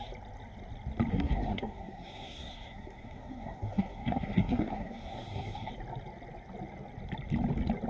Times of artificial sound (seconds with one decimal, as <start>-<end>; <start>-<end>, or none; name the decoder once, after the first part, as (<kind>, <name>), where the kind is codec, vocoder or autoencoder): 1.1-5.7 (codec, SNAC)